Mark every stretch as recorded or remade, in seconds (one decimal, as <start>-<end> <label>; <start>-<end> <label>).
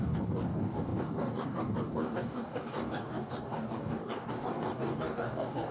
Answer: 0.0-5.7 remade